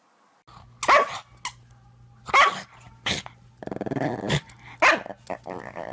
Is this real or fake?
real